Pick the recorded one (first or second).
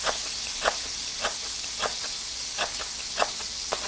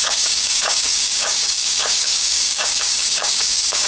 first